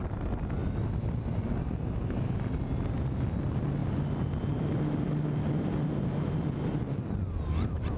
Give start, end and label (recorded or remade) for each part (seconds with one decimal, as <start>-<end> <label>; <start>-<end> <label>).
0.0-8.0 recorded